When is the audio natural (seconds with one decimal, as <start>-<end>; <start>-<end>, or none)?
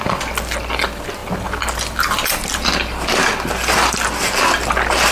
0.0-5.1